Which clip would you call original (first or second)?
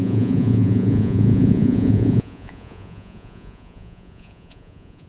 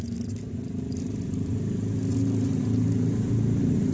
second